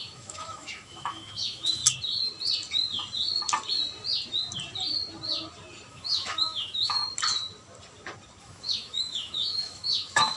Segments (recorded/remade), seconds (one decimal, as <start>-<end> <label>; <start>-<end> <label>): 0.0-1.8 remade; 1.8-5.9 recorded; 5.9-7.0 remade; 7.0-8.4 recorded; 8.4-10.4 remade